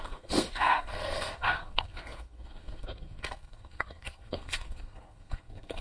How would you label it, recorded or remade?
remade